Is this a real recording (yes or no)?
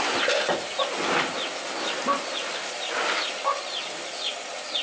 yes